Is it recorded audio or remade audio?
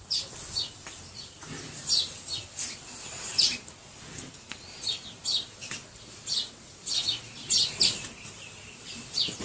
recorded